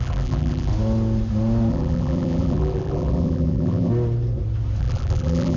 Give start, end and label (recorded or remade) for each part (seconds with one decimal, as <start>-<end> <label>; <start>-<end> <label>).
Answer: 0.0-0.7 remade; 0.7-1.7 recorded; 1.7-3.9 remade; 3.9-4.8 recorded; 4.8-5.6 remade